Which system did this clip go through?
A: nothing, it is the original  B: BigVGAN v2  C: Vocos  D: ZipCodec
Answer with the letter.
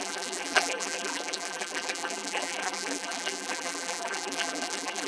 B